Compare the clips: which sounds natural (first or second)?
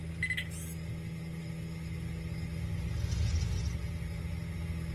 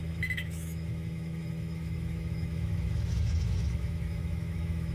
first